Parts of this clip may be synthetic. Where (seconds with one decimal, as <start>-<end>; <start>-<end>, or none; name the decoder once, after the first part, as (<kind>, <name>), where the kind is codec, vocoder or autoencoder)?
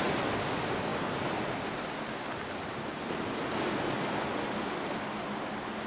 none